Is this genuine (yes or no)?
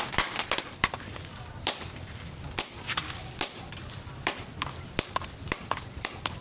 no